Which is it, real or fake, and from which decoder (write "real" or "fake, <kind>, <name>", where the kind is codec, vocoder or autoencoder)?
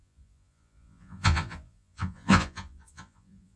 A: fake, vocoder, Vocos